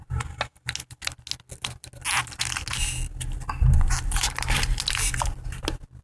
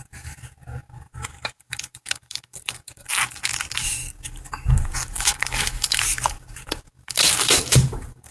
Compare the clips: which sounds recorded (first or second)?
first